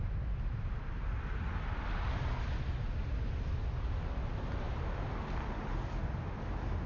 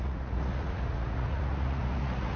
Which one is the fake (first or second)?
second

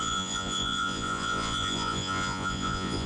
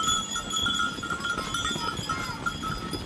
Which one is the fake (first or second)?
first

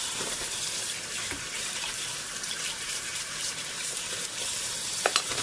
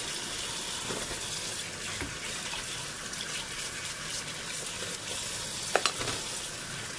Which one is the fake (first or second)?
first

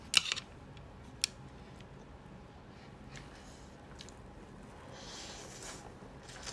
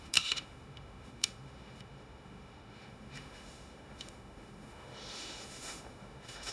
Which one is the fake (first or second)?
second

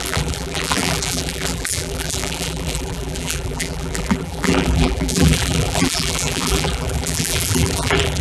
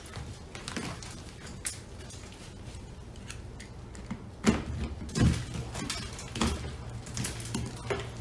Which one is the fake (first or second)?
first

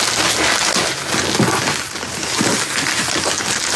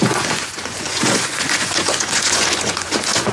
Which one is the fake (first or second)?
second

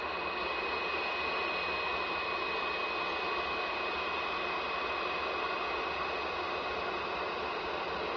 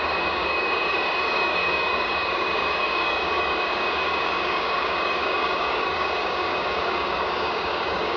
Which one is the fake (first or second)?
second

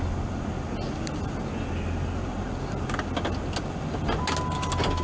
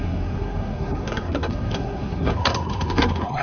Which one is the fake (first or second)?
second